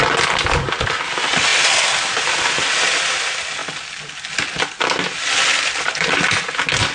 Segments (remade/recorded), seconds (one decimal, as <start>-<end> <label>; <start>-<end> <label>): 0.0-6.9 recorded